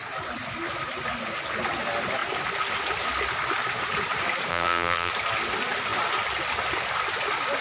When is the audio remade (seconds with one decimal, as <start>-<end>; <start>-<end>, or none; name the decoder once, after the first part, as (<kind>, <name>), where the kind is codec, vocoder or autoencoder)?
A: 4.5-5.1 (vocoder, BigVGAN v2)